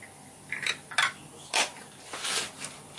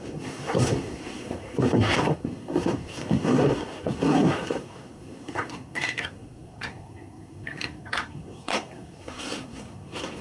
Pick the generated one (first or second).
second